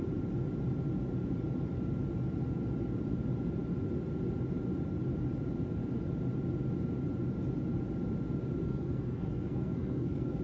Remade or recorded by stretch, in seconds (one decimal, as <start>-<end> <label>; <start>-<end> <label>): 0.0-8.6 recorded; 8.6-10.4 remade